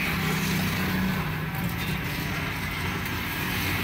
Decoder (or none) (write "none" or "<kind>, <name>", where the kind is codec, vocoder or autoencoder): none